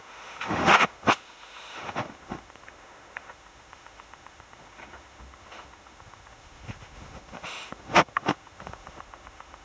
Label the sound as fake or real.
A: fake